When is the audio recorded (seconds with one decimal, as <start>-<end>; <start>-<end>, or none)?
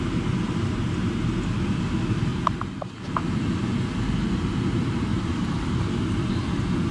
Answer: 0.0-2.3; 2.9-5.1; 5.9-6.9